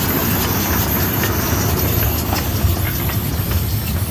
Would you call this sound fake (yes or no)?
no